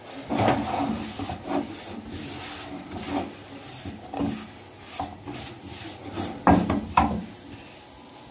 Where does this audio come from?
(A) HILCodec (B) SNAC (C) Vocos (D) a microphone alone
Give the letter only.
D